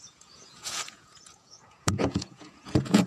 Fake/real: fake